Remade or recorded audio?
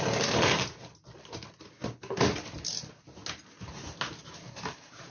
recorded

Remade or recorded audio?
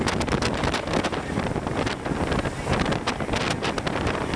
recorded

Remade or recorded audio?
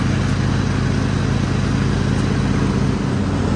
recorded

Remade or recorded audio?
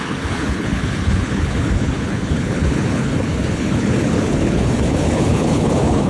remade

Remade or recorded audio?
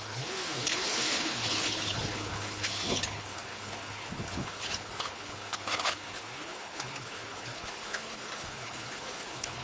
remade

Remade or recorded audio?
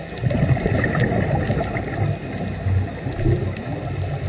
recorded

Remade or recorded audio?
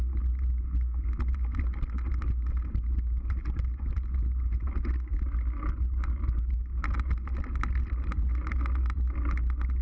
recorded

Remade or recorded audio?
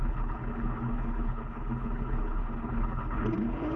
remade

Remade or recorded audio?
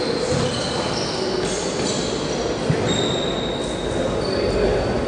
recorded